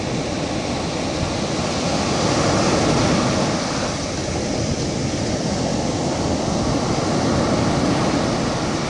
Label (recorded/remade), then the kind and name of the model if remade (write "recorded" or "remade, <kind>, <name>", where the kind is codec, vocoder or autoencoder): recorded